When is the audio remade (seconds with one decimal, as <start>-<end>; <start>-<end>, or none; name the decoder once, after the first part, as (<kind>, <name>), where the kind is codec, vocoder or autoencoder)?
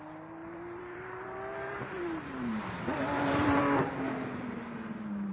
0.4-3.6 (vocoder, BigVGAN v2)